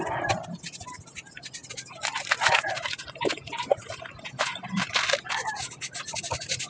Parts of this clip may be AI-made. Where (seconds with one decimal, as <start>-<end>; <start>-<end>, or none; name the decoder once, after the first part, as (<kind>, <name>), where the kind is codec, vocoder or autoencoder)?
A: none